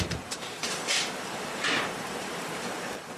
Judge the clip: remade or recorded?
remade